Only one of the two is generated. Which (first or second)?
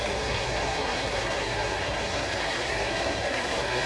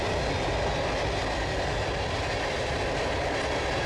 first